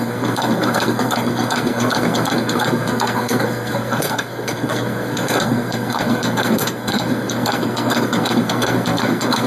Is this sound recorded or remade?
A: remade